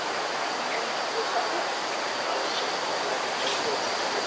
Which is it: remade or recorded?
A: recorded